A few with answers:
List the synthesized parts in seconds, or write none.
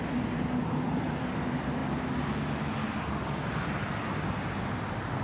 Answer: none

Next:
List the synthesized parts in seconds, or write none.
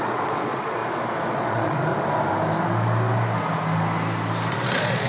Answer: 0.0-0.8 (vocoder, Vocos); 1.3-1.9; 4.5-5.1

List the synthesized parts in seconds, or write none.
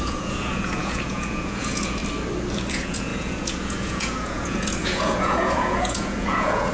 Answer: 0.0-2.0 (vocoder, Vocos); 2.7-6.7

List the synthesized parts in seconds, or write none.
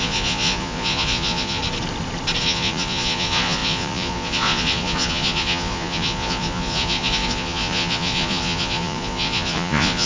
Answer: 0.0-1.6 (vocoder, Vocos); 2.4-10.1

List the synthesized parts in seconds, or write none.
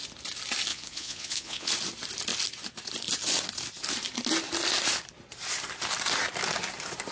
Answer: 0.7-1.7 (vocoder, Vocos)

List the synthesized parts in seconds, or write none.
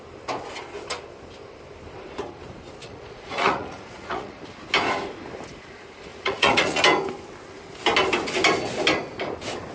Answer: 2.8-4.4 (vocoder, Vocos); 6.1-6.8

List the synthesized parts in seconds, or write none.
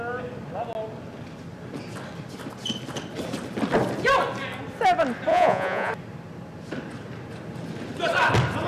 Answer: 5.3-5.9 (vocoder, Vocos)